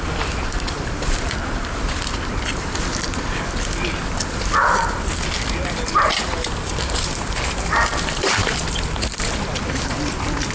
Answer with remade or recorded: remade